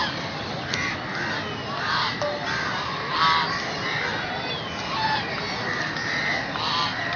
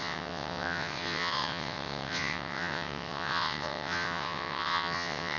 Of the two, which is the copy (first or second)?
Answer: second